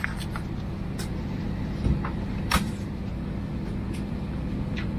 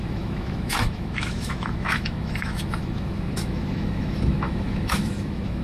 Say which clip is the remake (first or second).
second